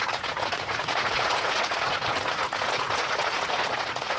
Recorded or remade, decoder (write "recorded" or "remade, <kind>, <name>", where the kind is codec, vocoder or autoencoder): remade, vocoder, Vocos